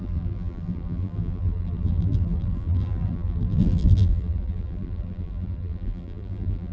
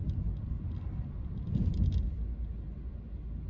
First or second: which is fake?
first